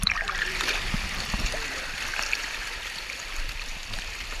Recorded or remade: remade